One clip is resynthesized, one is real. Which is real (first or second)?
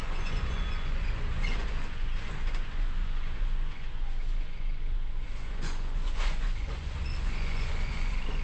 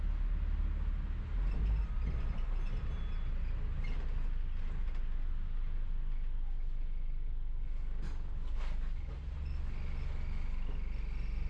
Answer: second